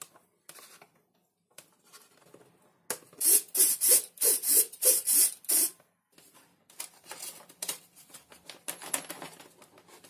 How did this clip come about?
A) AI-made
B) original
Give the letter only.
B